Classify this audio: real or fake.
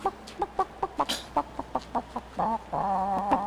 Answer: real